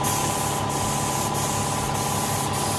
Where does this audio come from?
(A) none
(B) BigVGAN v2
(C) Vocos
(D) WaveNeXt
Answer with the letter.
A